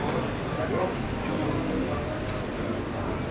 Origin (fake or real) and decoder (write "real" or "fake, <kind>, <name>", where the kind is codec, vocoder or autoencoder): real